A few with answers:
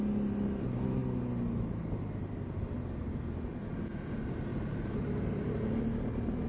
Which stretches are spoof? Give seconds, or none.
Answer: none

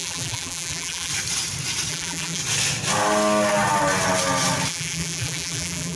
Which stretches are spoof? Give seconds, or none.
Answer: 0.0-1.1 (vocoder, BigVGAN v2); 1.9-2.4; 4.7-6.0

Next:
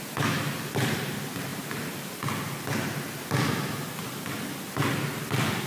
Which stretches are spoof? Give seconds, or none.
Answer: none

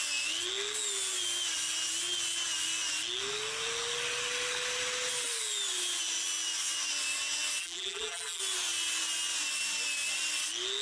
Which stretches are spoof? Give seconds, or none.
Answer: 7.6-8.4 (vocoder, BigVGAN v2)

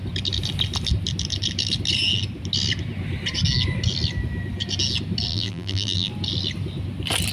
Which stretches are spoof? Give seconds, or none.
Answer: 5.3-6.1 (vocoder, BigVGAN v2)

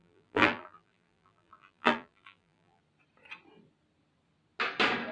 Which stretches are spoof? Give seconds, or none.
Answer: 0.0-2.8 (vocoder, BigVGAN v2)

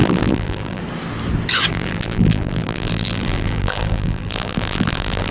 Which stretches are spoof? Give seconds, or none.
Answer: 0.0-0.8 (vocoder, BigVGAN v2); 1.7-5.3

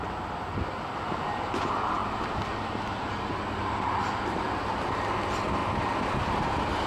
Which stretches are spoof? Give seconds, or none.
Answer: 0.0-2.0 (vocoder, BigVGAN v2); 3.5-5.6